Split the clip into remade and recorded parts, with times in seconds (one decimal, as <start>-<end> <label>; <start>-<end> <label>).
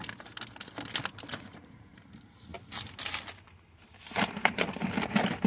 0.0-1.3 recorded; 1.3-1.9 remade; 1.9-5.5 recorded